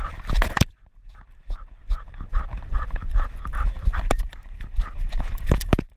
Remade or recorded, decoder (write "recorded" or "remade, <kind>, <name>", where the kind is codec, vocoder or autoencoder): remade, vocoder, BigVGAN v2